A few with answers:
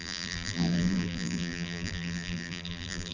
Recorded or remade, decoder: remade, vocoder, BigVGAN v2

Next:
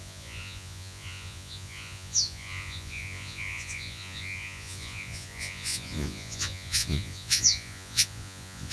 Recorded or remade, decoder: remade, vocoder, Vocos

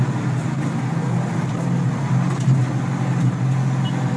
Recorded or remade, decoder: recorded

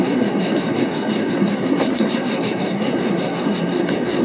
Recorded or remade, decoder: remade, codec, SNAC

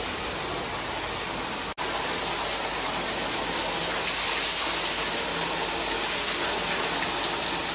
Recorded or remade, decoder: recorded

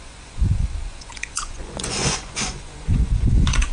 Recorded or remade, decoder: remade, vocoder, Vocos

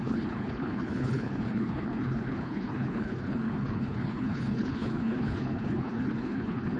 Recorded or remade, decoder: remade, codec, HILCodec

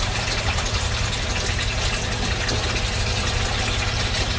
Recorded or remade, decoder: recorded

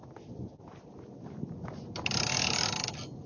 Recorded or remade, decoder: recorded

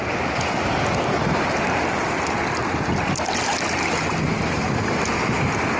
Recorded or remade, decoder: recorded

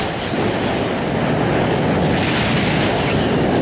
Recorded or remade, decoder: recorded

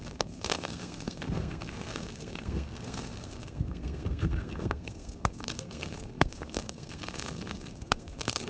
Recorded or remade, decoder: remade, codec, SNAC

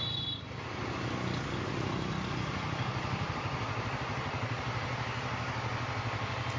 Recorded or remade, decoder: recorded